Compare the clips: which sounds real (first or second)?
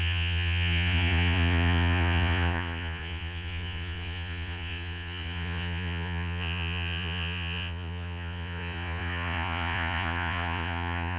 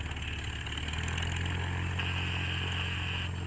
second